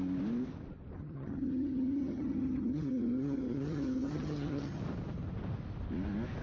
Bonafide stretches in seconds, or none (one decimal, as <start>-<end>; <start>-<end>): 0.0-1.0; 4.8-6.4